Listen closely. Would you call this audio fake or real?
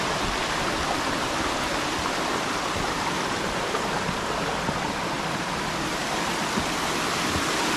real